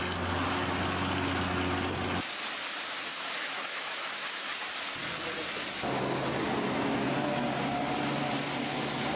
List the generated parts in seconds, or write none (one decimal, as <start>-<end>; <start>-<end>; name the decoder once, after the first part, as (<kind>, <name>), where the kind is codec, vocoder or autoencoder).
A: 3.1-4.5 (autoencoder, DAC-VAE)